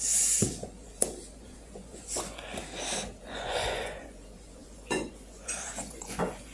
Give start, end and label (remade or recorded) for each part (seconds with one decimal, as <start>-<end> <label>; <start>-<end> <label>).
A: 0.0-2.6 remade; 2.6-3.2 recorded; 3.2-6.5 remade